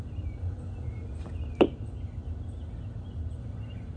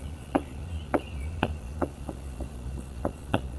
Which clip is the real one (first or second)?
first